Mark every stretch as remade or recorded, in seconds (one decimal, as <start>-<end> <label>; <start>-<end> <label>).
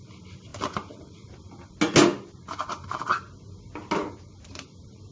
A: 0.0-5.1 recorded